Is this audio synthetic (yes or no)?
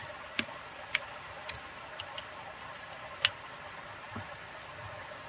no